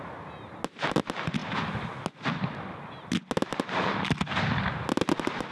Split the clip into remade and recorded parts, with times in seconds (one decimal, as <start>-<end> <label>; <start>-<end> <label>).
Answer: 0.0-5.5 recorded